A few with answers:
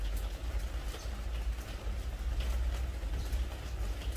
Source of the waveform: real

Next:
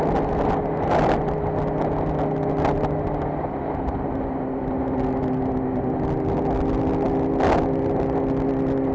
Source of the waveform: real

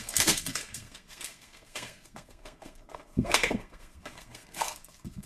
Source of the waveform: fake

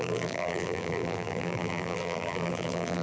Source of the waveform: fake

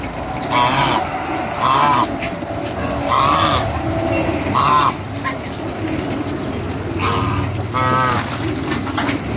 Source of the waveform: real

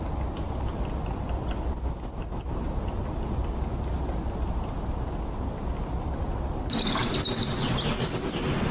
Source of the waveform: real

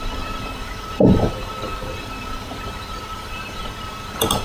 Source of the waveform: fake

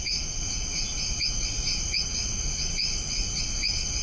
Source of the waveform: fake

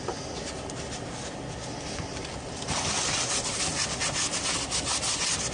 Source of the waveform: real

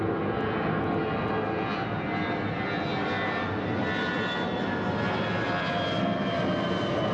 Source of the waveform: real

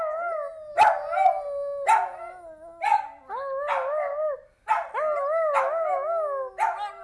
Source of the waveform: real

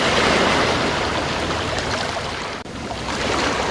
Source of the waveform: real